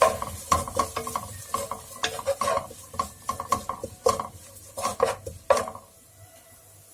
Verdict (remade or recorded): recorded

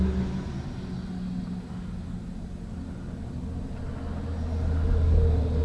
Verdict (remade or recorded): recorded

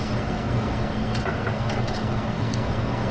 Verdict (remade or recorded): remade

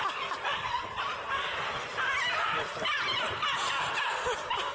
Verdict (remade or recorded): recorded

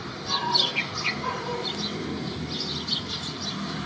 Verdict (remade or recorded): recorded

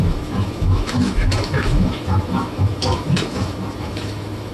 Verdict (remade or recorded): remade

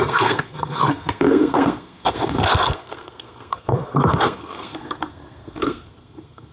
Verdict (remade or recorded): remade